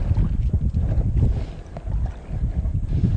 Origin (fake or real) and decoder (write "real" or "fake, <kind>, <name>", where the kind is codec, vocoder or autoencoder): real